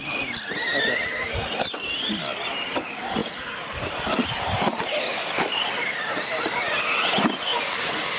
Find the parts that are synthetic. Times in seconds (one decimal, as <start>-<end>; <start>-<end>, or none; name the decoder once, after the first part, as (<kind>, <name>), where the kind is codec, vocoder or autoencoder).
3.2-4.0 (vocoder, BigVGAN v2); 5.1-5.8; 7.5-8.2